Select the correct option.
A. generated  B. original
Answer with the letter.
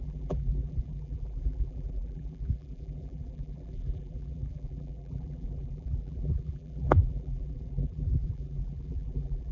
A